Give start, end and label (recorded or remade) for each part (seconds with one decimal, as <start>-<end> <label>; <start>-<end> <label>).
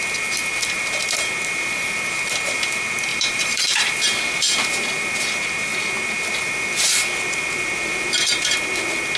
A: 0.0-3.1 recorded; 3.1-4.0 remade; 4.0-9.2 recorded